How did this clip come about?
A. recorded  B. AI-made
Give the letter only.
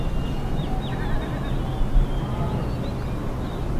A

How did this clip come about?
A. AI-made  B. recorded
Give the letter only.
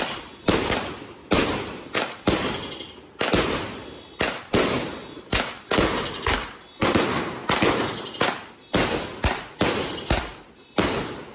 B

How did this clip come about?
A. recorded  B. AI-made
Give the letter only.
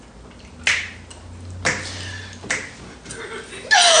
A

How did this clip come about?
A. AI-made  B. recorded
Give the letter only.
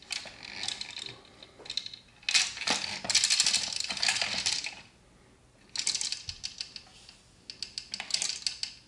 B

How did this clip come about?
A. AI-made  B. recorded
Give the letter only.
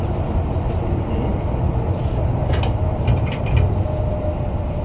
B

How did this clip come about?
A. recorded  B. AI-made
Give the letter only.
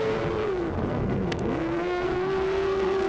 B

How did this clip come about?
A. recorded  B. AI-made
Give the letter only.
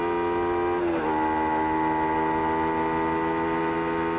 A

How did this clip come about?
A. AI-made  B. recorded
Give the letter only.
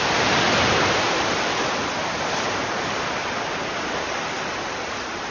B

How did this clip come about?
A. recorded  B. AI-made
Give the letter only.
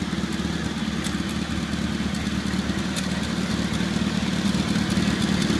A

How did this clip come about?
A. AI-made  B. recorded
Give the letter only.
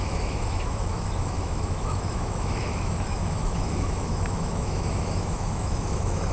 A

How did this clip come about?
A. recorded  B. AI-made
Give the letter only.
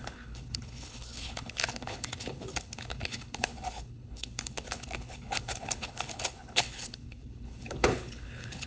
B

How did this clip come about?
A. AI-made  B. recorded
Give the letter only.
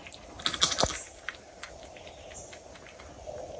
B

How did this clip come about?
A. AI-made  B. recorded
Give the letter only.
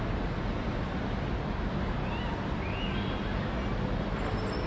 B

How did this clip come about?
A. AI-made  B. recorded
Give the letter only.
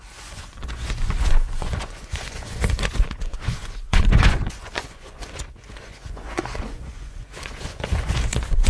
A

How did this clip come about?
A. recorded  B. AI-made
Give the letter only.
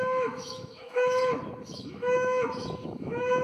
B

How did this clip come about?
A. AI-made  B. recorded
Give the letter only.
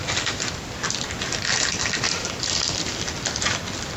B